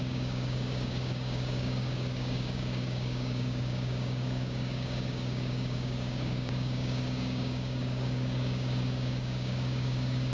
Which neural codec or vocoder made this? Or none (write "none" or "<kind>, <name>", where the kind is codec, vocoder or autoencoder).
codec, DAC